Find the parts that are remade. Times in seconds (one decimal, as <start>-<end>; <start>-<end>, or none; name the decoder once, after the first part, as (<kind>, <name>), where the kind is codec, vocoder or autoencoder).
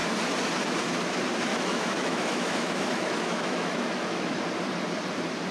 1.5-4.4 (autoencoder, DAC-VAE)